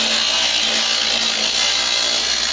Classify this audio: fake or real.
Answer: real